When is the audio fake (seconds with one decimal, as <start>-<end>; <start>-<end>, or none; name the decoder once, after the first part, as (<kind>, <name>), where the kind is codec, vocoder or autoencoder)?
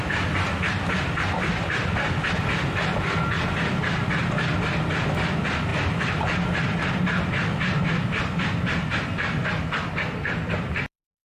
none